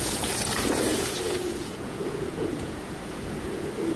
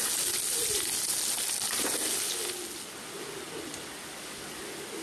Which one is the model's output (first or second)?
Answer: first